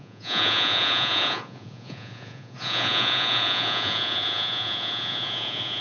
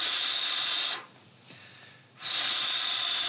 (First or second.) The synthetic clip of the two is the first